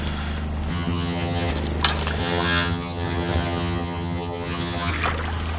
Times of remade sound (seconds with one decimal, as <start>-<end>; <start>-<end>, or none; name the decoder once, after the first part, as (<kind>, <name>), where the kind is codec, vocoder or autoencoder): 0.7-1.5 (vocoder, HiFi-GAN); 2.2-4.9